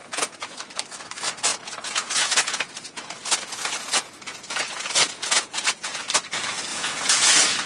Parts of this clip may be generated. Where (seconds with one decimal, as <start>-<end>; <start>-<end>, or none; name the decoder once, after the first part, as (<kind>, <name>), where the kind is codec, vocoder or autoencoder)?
0.0-0.6 (vocoder, Vocos); 1.5-6.1; 6.7-7.3